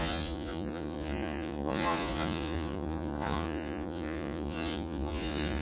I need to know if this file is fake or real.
fake